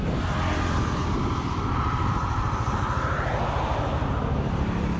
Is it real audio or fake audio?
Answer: real